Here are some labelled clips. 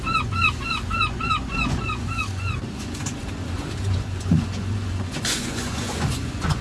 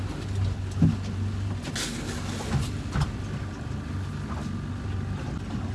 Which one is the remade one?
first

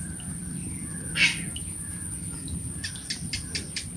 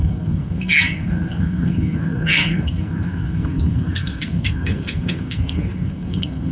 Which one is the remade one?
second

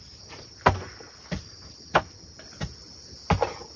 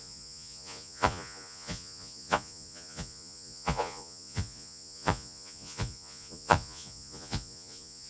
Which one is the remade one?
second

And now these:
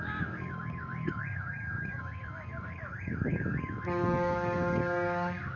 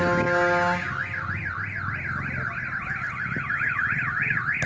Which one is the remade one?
first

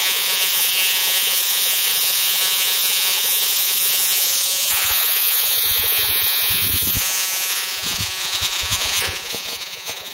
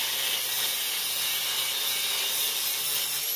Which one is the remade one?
first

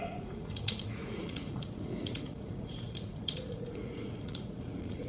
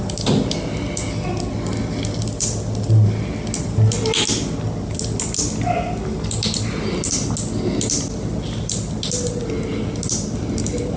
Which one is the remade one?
first